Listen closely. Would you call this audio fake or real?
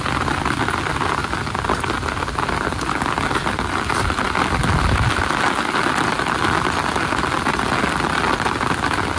real